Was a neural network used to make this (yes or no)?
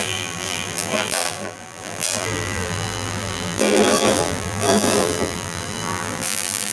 yes